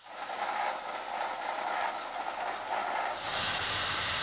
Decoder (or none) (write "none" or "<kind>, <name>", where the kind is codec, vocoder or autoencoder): none